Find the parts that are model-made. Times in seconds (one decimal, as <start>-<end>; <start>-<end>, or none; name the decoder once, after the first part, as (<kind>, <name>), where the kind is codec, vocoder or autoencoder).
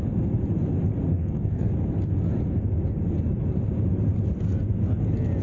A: 1.1-1.7 (codec, SNAC)